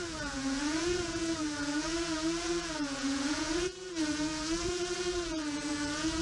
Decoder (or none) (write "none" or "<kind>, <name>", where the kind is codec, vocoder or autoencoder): vocoder, Vocos